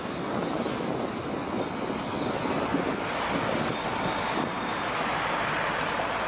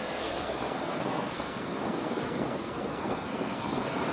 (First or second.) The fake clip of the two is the second